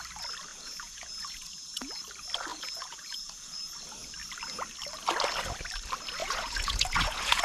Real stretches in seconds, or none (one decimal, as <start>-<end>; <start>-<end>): 0.0-0.5; 2.0-2.5; 3.5-6.2